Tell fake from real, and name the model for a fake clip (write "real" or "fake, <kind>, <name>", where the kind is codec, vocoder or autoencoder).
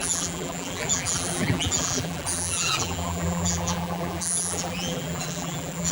fake, vocoder, BigVGAN v2